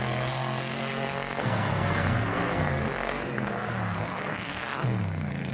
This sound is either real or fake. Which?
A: fake